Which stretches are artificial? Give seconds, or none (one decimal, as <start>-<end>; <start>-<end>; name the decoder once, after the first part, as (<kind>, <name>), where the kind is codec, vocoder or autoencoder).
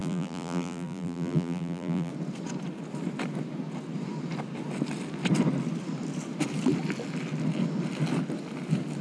0.0-2.1 (vocoder, BigVGAN v2)